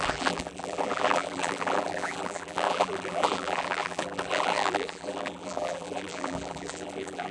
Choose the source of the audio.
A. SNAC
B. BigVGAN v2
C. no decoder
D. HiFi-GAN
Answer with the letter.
B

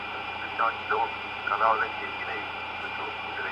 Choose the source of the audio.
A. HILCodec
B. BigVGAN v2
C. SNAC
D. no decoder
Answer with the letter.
B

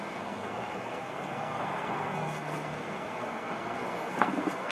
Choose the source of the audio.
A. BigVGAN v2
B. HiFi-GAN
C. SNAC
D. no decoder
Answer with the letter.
C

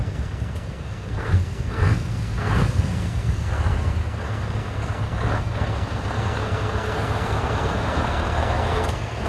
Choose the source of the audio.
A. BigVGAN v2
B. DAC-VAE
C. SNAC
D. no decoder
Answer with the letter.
C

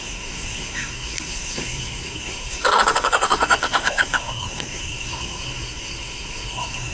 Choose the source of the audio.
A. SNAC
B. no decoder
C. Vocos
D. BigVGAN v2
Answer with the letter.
A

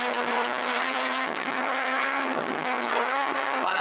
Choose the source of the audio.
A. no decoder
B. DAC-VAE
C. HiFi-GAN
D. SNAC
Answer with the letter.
C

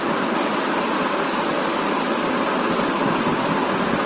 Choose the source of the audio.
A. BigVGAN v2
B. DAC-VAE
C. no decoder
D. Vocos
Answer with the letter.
C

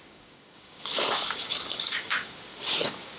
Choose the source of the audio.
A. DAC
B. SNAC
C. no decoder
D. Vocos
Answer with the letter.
A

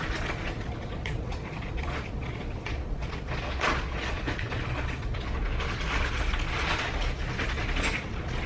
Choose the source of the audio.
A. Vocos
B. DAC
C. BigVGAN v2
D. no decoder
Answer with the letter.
A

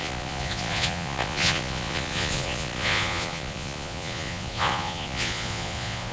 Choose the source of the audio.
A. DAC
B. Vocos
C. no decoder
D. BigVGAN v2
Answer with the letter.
B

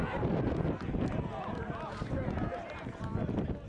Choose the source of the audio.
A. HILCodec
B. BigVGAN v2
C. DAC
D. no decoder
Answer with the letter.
D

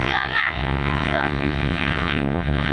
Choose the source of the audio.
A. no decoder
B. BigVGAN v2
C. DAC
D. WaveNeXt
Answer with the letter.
D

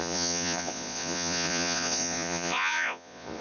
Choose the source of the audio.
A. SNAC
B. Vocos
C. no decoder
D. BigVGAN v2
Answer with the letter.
B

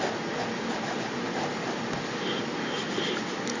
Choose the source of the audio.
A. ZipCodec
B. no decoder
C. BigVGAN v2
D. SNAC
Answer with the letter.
B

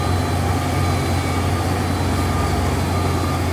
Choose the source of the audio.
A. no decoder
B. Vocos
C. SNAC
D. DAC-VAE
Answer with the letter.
A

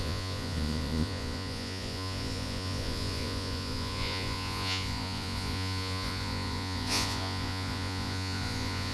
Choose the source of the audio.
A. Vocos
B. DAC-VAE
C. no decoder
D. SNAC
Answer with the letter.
A